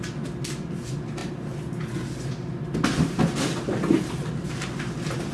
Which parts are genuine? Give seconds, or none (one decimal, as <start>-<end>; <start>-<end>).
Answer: 0.0-5.3